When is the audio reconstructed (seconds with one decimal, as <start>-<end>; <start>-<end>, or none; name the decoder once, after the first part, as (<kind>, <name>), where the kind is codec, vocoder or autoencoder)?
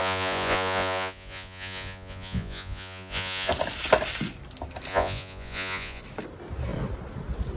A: 0.0-3.5 (vocoder, Vocos); 4.9-6.0